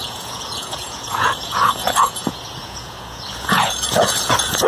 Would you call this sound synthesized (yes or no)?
yes